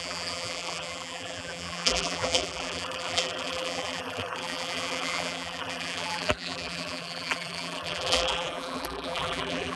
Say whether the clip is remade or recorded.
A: remade